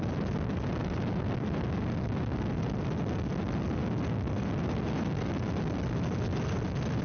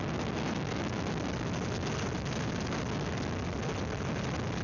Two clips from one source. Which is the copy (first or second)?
first